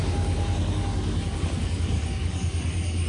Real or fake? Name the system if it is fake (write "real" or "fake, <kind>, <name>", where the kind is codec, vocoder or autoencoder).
fake, codec, DAC